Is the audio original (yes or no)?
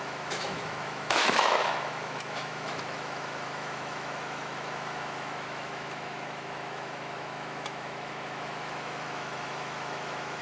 no